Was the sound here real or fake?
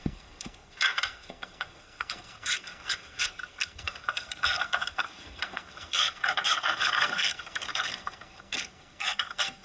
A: fake